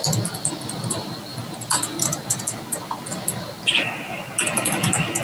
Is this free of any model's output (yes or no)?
yes